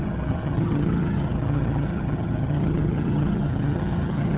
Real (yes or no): no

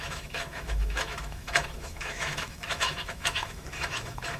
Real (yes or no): no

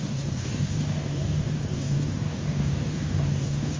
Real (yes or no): no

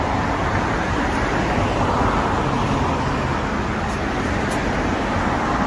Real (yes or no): yes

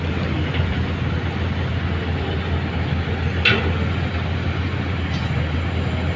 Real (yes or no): yes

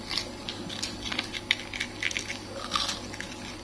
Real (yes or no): yes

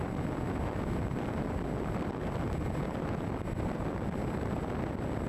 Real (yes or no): yes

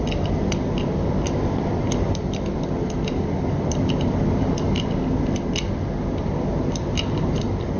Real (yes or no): yes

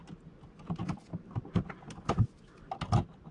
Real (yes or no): yes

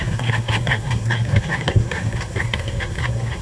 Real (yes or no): no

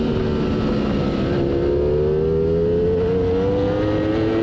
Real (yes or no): yes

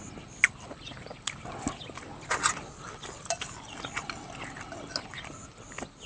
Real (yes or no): yes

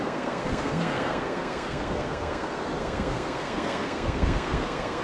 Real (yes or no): no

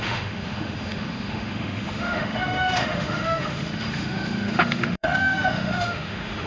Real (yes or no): no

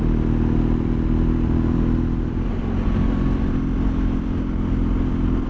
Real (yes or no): yes